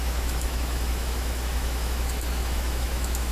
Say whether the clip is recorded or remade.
remade